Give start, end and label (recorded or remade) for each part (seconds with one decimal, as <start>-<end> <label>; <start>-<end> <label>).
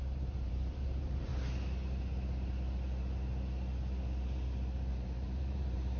0.0-1.3 remade; 1.3-4.9 recorded; 4.9-6.0 remade